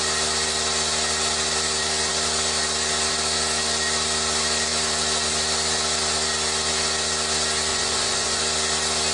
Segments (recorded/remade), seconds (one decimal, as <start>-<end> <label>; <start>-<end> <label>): 0.0-7.7 recorded; 7.7-8.4 remade; 8.4-9.1 recorded